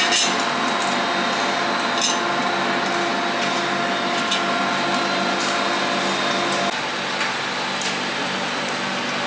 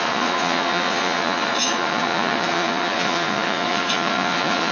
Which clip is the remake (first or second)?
second